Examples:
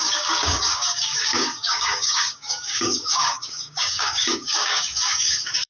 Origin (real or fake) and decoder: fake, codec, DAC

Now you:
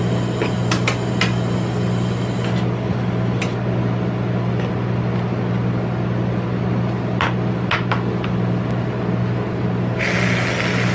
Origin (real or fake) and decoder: real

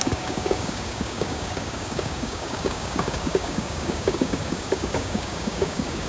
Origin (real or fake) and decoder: fake, codec, DAC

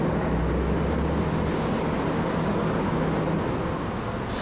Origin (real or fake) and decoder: real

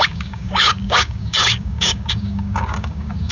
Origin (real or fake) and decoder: fake, codec, DAC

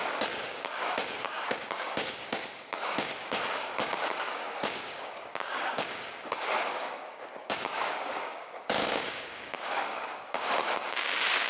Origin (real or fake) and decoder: fake, codec, DAC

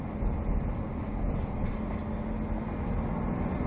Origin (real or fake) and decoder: real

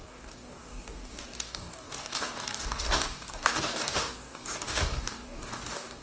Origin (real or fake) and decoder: fake, codec, DAC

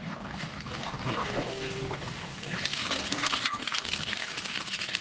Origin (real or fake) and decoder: fake, codec, DAC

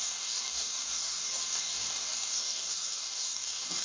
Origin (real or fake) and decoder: fake, codec, DAC